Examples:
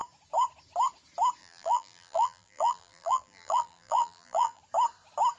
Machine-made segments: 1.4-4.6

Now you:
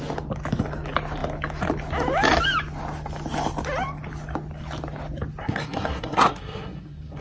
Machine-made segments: 5.4-7.2

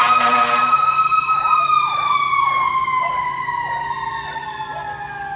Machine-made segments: 2.3-3.6; 4.3-4.7

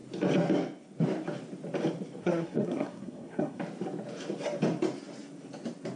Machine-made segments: 2.2-3.6

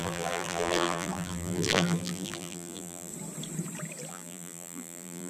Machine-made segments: 0.0-3.1; 4.1-5.3

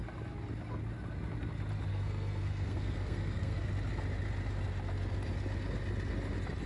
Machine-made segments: 1.9-3.7

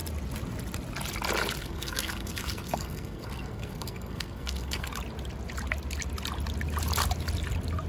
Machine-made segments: 1.6-4.9